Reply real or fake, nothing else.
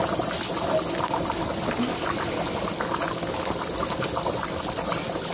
real